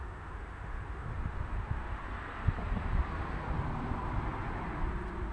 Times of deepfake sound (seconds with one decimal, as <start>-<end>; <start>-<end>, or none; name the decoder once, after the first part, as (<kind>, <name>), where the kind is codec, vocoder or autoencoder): 0.0-2.0 (autoencoder, DAC-VAE)